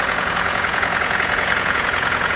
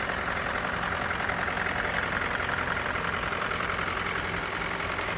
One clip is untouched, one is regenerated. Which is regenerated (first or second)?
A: first